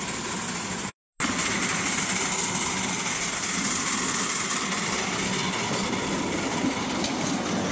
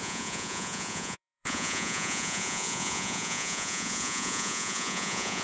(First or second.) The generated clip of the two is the second